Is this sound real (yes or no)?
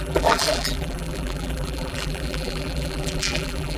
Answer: no